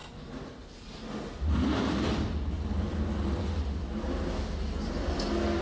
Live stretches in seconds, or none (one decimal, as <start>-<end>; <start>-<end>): 0.0-5.6